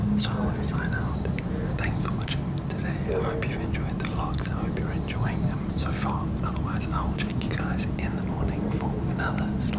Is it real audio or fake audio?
real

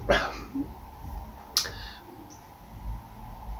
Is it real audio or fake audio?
real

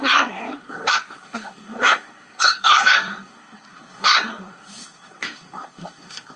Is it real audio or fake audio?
fake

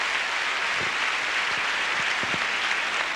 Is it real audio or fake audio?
real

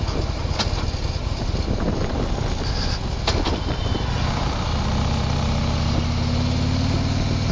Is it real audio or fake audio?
real